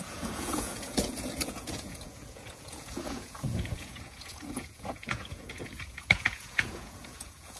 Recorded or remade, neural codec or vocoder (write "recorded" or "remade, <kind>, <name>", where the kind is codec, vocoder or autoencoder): remade, vocoder, Vocos